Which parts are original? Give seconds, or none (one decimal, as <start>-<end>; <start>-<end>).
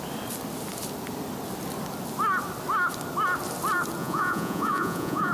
0.0-4.0